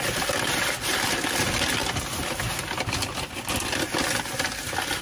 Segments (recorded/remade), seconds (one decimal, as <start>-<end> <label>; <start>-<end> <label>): 0.0-5.0 recorded